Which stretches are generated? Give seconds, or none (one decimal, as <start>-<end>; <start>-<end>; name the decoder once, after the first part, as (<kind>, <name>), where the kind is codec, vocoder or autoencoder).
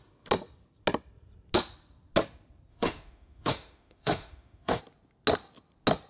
2.7-4.8 (autoencoder, DAC-VAE)